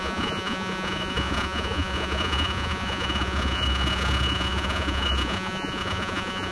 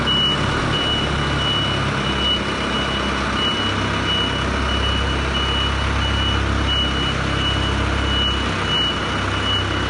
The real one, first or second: second